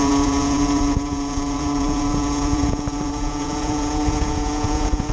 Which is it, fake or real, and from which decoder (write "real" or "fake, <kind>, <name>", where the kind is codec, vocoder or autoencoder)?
fake, vocoder, Vocos